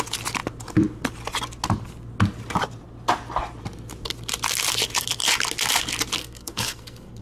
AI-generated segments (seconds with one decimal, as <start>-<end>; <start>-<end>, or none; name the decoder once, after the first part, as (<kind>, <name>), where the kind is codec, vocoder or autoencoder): 6.2-7.2 (codec, SNAC)